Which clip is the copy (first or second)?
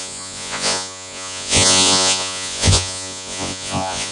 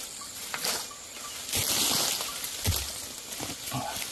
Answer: first